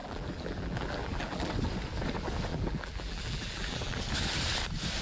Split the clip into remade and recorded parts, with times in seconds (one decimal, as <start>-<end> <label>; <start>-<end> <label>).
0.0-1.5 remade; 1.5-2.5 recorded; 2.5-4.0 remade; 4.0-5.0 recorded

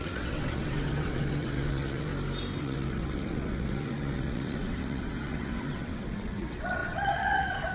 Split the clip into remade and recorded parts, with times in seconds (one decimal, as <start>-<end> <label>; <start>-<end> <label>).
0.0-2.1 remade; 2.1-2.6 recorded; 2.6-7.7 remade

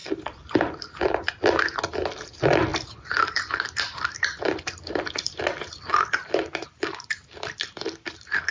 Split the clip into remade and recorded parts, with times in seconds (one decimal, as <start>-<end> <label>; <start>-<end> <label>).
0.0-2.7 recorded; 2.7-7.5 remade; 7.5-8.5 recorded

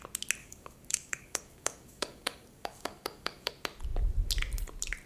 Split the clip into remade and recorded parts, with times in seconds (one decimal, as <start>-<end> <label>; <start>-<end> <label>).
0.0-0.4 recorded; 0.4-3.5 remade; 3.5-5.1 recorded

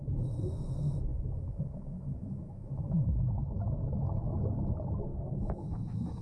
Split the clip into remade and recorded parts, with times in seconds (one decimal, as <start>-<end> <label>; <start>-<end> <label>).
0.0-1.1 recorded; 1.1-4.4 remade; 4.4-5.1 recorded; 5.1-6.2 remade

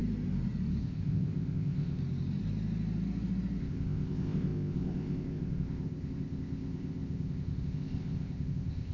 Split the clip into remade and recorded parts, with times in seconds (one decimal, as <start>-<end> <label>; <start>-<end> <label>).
0.0-0.8 recorded; 0.8-2.0 remade; 2.0-3.6 recorded; 3.6-8.9 remade